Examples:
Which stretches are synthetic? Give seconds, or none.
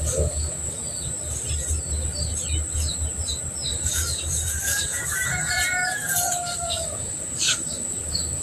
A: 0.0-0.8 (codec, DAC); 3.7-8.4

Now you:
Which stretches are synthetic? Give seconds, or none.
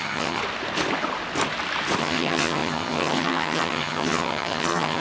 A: 0.0-0.4 (vocoder, HiFi-GAN); 2.0-5.0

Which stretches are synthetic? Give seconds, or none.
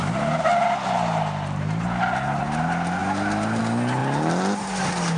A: 4.0-4.6 (vocoder, BigVGAN v2)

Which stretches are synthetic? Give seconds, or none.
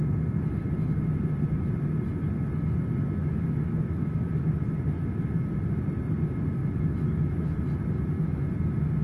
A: 3.2-4.6 (autoencoder, DAC-VAE); 6.6-7.6